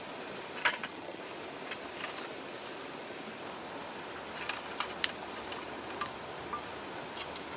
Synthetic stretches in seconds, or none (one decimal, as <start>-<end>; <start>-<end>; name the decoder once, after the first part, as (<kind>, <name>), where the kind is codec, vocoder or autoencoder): 0.6-1.2 (vocoder, HiFi-GAN)

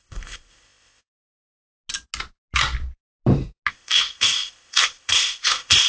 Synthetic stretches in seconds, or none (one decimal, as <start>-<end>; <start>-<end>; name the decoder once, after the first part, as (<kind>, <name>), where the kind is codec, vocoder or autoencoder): 0.0-1.0 (codec, ZipCodec); 3.7-5.9

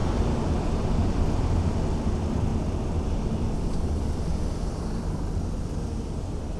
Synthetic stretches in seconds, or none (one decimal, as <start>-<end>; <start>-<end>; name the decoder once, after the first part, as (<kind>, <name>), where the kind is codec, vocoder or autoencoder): none

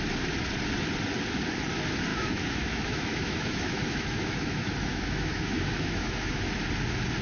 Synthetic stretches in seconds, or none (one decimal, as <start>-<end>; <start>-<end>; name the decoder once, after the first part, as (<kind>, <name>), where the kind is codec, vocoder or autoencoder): 2.1-6.4 (autoencoder, DAC-VAE)

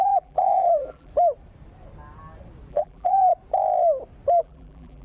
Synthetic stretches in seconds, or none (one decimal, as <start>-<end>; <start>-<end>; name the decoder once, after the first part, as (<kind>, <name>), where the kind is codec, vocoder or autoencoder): 0.0-1.1 (vocoder, BigVGAN v2); 2.7-3.3; 4.4-5.0

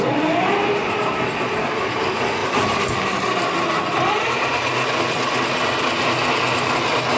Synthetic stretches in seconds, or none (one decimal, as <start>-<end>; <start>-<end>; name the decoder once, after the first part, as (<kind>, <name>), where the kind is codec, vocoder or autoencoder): none

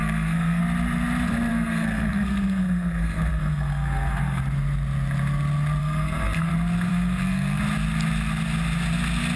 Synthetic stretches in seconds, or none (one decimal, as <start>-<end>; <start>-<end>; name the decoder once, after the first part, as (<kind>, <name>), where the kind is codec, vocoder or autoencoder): 0.0-0.6 (codec, SNAC); 1.5-4.4; 5.8-6.5; 6.9-7.6

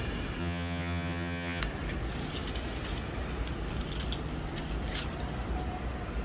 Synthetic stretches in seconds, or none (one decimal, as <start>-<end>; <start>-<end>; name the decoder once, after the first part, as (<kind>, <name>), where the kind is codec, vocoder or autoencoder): 0.4-1.6 (vocoder, HiFi-GAN)